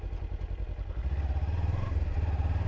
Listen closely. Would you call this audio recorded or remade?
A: recorded